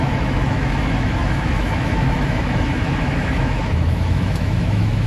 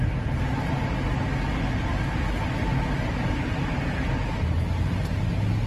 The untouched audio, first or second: second